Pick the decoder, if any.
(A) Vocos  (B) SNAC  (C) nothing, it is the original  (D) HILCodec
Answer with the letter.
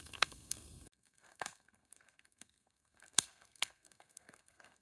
B